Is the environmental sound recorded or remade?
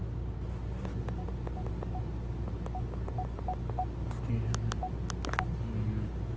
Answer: recorded